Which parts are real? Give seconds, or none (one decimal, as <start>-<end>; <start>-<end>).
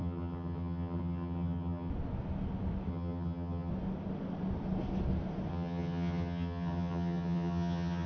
1.9-2.9; 3.7-5.5